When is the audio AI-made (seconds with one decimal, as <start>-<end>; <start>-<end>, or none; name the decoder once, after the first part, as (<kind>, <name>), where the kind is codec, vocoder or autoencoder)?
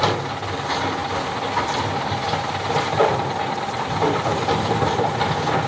none